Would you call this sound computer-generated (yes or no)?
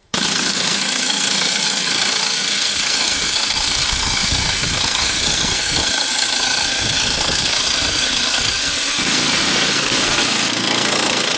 yes